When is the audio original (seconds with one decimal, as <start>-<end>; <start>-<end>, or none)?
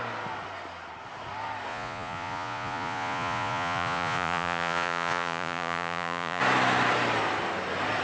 0.0-1.7; 6.4-8.0